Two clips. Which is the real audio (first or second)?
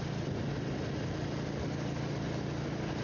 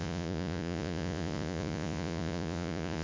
first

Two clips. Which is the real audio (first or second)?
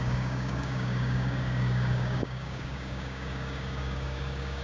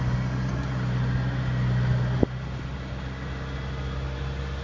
second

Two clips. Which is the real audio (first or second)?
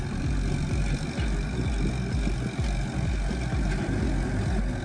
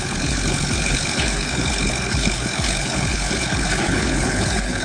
first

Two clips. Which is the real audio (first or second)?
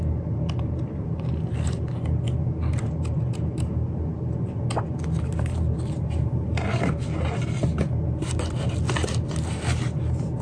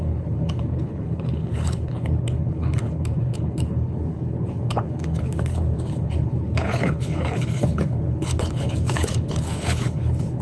first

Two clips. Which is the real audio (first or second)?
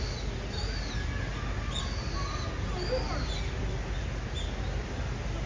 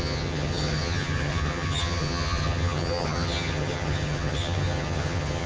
first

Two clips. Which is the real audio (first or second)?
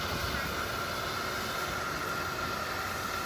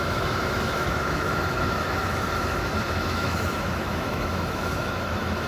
first